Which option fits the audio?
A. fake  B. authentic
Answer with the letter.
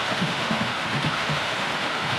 A